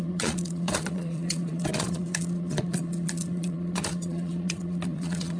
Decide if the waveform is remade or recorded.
remade